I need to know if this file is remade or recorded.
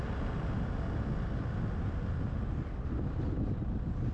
recorded